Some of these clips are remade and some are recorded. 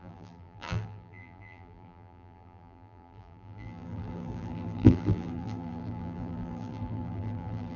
remade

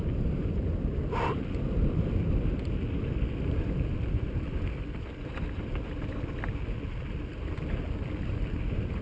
recorded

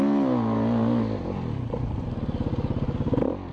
recorded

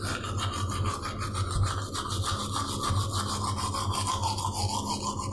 recorded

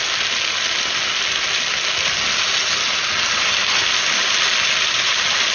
recorded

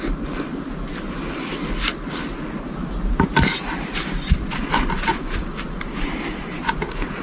recorded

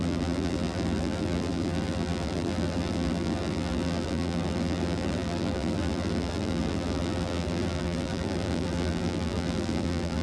remade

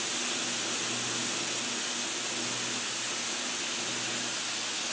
recorded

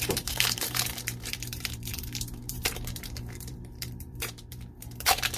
remade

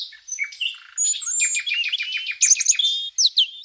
recorded